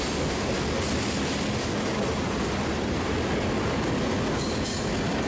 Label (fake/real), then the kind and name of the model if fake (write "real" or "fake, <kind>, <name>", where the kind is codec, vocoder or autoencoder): real